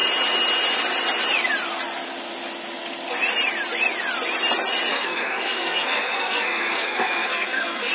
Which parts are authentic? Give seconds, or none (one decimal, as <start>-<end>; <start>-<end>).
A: 0.0-4.9